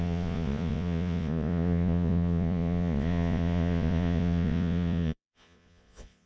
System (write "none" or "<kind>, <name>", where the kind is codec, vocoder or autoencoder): vocoder, Vocos